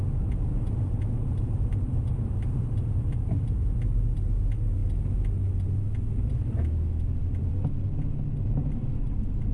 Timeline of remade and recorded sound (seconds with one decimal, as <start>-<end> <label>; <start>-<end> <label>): 0.0-1.2 recorded; 1.2-3.5 remade; 3.5-9.5 recorded